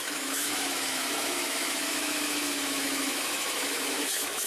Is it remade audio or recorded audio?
remade